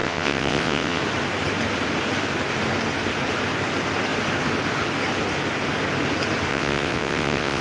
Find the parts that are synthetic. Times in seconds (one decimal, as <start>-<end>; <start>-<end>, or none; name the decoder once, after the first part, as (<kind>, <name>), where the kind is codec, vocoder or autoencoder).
0.0-1.0 (vocoder, WaveNeXt); 6.5-7.6

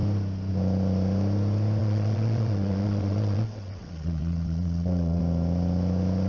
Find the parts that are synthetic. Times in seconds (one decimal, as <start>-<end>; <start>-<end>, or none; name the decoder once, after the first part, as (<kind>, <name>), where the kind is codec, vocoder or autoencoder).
1.8-5.2 (vocoder, WaveNeXt)

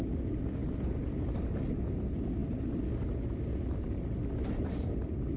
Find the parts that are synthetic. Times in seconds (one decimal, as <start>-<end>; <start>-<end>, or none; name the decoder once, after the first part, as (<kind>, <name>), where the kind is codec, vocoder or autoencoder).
none

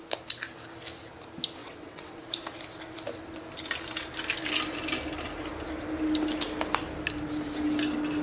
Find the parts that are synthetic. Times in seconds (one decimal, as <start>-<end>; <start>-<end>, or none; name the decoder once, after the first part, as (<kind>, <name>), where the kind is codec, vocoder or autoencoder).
1.6-2.2 (vocoder, WaveNeXt)

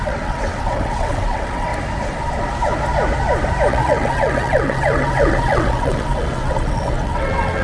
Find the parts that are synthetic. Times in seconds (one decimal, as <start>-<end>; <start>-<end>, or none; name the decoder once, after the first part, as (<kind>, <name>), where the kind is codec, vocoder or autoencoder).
0.0-1.7 (vocoder, WaveNeXt); 3.7-7.6